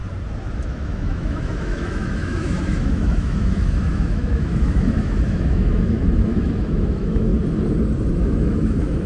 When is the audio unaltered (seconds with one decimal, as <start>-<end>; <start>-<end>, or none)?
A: 0.0-0.5; 7.3-8.2